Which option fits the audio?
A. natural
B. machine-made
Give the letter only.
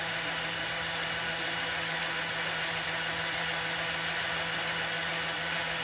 A